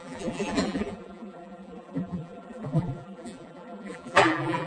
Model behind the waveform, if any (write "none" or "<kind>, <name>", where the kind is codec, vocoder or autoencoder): vocoder, BigVGAN v2